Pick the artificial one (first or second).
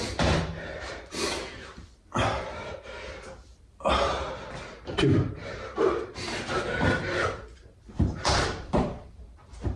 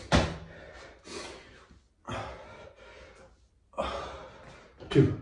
first